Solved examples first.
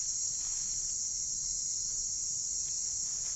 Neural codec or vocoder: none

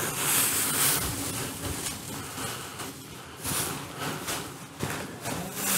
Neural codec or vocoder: none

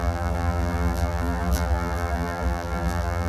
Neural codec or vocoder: vocoder, BigVGAN v2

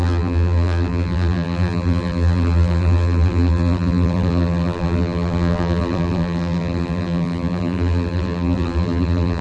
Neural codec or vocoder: vocoder, BigVGAN v2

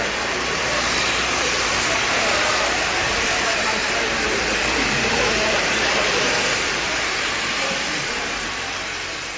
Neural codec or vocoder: vocoder, BigVGAN v2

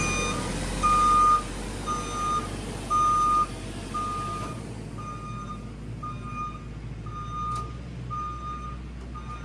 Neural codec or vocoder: none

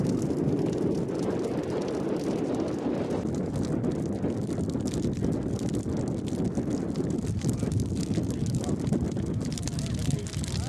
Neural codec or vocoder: none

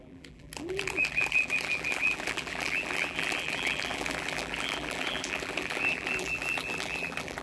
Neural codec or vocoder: vocoder, BigVGAN v2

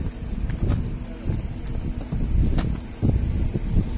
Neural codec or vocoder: none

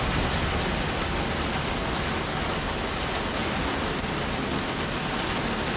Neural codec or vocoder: none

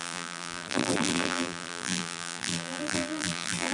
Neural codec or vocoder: vocoder, BigVGAN v2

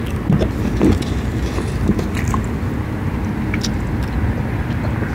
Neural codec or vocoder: none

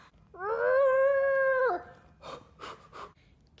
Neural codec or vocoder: none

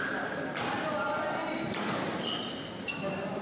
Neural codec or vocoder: vocoder, BigVGAN v2